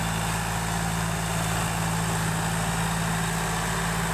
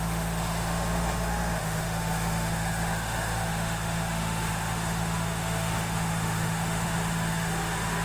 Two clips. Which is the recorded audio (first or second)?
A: first